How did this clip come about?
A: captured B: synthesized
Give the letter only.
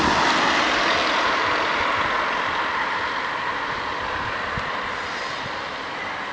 A